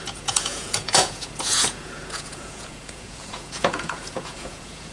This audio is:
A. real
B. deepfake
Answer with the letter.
B